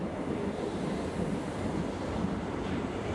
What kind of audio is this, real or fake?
fake